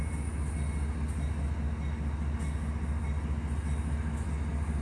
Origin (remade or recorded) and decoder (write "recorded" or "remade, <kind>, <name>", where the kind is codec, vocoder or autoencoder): recorded